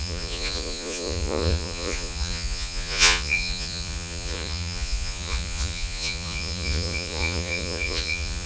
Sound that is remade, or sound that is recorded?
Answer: remade